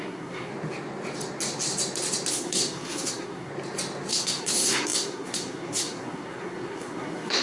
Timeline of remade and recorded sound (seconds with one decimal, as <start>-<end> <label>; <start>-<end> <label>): 0.0-0.5 remade; 0.5-2.3 recorded; 2.3-3.5 remade; 3.5-4.1 recorded; 4.1-7.4 remade